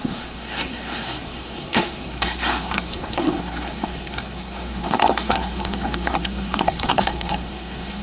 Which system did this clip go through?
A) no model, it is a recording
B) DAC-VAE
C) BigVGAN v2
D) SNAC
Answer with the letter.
D